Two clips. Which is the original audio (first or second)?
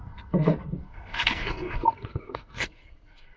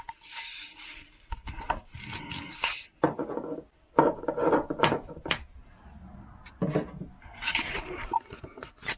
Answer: second